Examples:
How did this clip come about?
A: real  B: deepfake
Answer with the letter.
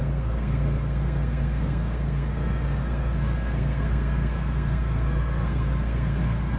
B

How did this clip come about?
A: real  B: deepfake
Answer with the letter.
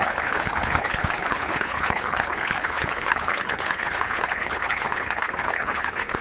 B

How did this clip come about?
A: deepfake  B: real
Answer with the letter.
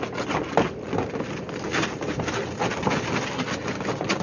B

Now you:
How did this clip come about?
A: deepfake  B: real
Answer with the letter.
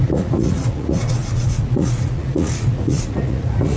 A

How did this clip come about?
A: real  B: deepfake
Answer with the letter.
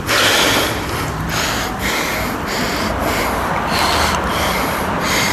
A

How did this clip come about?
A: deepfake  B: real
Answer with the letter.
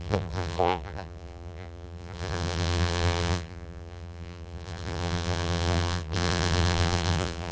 A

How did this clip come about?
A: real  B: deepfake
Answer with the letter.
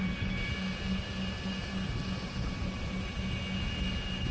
A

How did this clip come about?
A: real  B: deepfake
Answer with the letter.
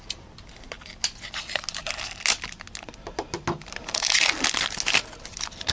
A